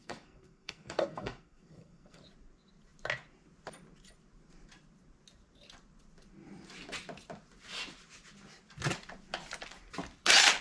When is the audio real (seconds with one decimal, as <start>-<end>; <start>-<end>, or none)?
2.2-10.6